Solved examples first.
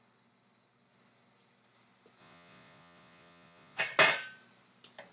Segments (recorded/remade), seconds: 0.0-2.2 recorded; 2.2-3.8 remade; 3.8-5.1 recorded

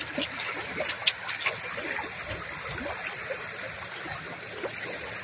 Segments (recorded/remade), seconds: 0.0-5.2 recorded

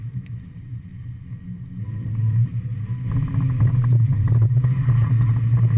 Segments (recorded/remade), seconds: 0.0-0.9 remade; 0.9-1.8 recorded; 1.8-2.7 remade; 2.7-3.4 recorded; 3.4-5.8 remade

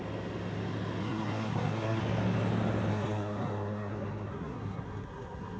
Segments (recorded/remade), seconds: 0.0-1.0 recorded; 1.0-2.0 remade; 2.0-2.9 recorded; 2.9-5.6 remade

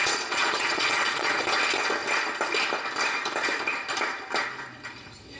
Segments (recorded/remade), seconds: 0.0-1.4 remade; 1.4-5.4 recorded